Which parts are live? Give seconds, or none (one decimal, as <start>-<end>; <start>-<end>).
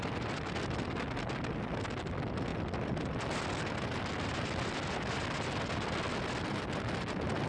0.0-7.5